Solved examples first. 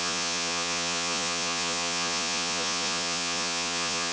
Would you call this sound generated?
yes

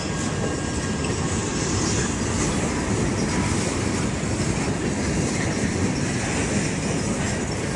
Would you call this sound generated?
no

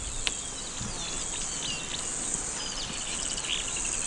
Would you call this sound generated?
no